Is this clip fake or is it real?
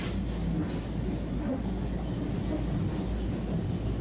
real